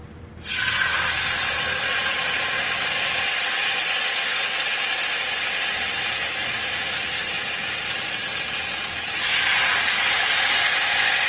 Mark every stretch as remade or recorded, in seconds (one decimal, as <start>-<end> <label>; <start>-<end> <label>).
0.0-11.3 recorded

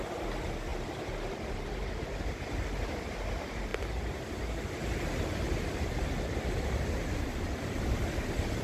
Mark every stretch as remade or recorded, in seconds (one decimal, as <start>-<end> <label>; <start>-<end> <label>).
0.0-8.6 recorded